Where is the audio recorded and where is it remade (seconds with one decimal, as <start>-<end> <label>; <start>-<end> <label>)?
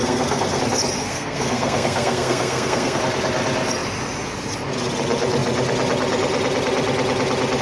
0.0-0.6 remade; 0.6-1.0 recorded; 1.0-3.0 remade; 3.0-7.6 recorded